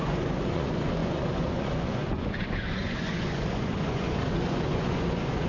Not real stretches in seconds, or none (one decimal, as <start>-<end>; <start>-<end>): 0.0-5.5